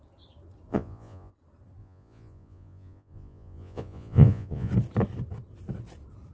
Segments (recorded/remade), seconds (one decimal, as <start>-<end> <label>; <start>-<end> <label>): 0.0-0.7 recorded; 0.7-1.3 remade; 1.3-1.8 recorded; 1.8-4.7 remade; 4.7-6.3 recorded